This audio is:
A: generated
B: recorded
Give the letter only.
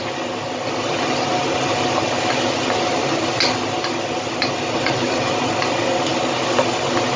B